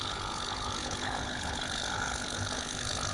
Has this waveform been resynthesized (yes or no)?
yes